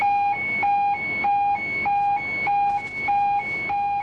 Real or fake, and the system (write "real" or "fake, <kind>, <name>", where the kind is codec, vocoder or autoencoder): real